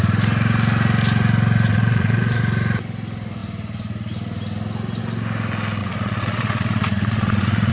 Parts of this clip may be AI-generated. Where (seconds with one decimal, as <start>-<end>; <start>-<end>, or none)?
1.7-2.4; 5.8-7.7